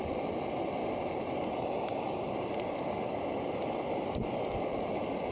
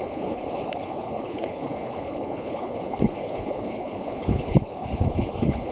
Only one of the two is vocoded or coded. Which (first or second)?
second